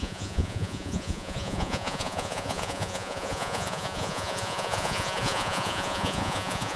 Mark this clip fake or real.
fake